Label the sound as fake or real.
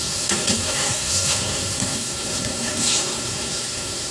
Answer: fake